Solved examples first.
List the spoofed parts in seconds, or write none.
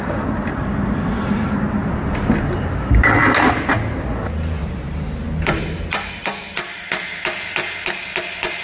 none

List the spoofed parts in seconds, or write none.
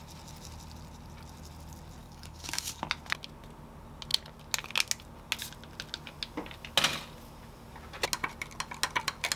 2.0-2.8 (codec, DAC)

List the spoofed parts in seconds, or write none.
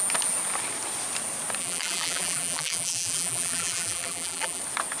1.6-4.6 (vocoder, BigVGAN v2)